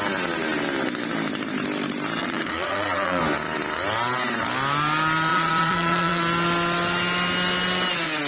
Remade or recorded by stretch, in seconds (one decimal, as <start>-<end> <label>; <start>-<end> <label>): 0.0-2.2 recorded; 2.2-3.2 remade; 3.2-5.3 recorded; 5.3-6.2 remade; 6.2-8.3 recorded